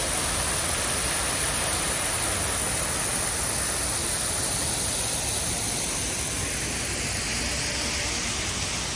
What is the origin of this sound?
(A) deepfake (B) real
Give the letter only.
B